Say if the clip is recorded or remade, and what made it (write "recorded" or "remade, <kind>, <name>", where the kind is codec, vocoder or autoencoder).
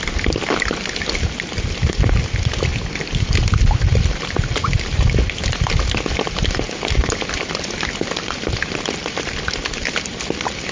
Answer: recorded